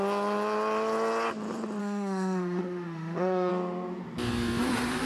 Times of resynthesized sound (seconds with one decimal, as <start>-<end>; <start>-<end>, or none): 1.8-3.5

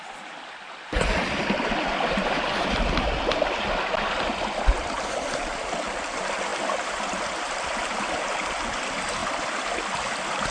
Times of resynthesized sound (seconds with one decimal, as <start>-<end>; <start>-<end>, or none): none

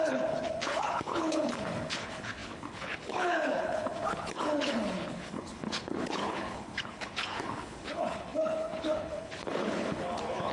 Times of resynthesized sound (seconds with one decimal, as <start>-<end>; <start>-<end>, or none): 0.0-10.5

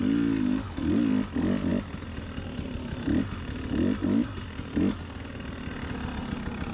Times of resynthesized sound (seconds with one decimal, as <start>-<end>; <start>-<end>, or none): none